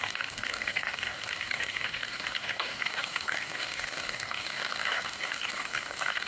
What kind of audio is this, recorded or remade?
remade